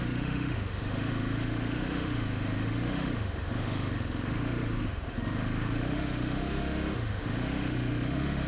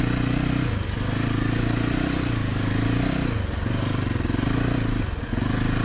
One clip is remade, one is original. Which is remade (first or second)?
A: first